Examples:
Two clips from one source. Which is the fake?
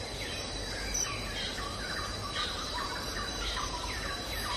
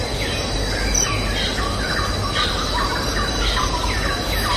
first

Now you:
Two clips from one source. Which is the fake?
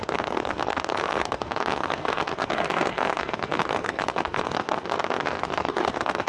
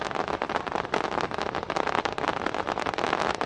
first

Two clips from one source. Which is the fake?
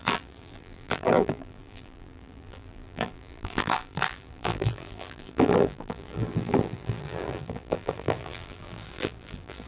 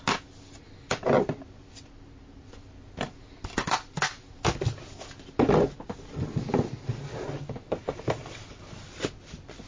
first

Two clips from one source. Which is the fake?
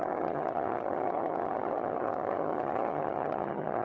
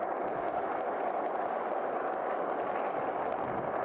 first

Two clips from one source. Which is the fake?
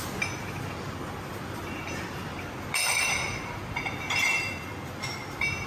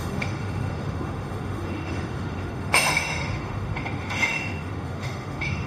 second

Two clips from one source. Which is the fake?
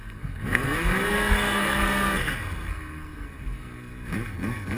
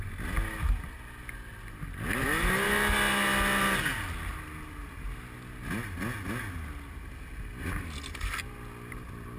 first